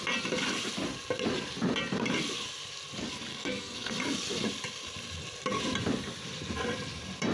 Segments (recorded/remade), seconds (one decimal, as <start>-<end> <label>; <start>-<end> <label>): 0.0-3.3 recorded; 3.3-3.9 remade; 3.9-7.3 recorded